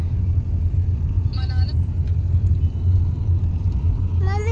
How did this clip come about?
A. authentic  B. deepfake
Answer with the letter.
A